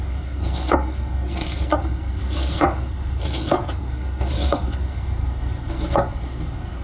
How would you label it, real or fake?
fake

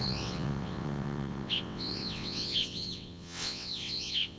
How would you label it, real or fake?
fake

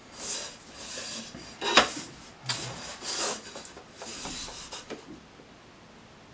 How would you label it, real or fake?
real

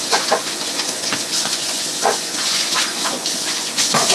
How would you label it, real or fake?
fake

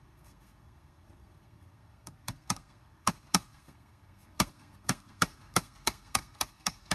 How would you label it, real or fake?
fake